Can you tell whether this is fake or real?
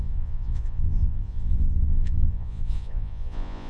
fake